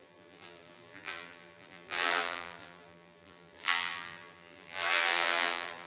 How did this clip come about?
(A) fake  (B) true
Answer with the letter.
A